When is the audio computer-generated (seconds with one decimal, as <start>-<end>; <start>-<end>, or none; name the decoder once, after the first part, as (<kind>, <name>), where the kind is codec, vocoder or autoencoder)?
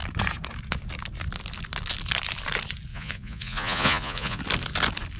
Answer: 2.9-4.4 (vocoder, Vocos)